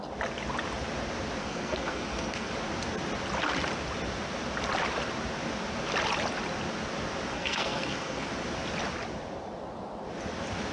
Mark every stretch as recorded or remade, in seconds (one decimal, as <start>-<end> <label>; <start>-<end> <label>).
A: 0.0-1.4 recorded; 1.4-2.5 remade; 2.5-7.3 recorded; 7.3-8.3 remade; 8.3-10.7 recorded